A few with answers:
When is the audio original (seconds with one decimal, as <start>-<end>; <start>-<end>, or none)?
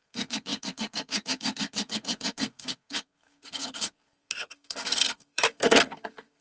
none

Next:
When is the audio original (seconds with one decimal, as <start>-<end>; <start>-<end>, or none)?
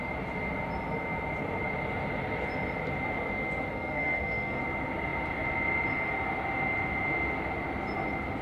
0.0-3.7; 4.6-8.4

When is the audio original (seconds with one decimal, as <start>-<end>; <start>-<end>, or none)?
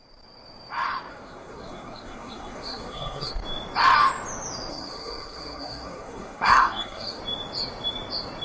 0.0-1.1; 3.3-4.7; 7.2-8.4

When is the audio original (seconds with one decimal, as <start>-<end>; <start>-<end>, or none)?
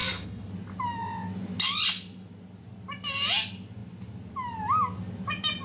0.5-5.6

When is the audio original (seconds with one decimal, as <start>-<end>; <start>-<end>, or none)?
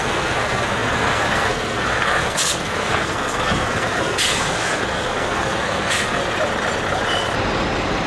6.2-8.1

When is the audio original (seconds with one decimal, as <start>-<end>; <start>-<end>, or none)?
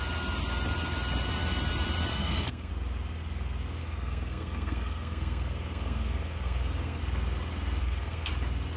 0.0-2.1; 2.7-3.8; 7.0-7.8; 8.3-8.8